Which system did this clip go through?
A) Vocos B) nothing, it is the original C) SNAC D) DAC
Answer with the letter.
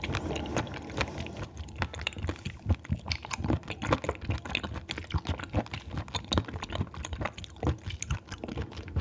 B